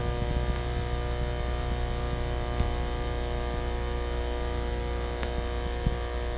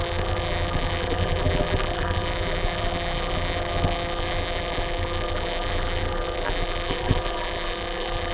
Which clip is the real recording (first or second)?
first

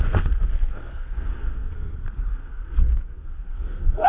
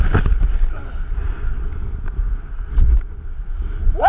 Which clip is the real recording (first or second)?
second